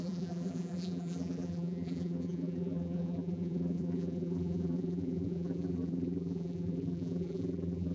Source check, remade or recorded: remade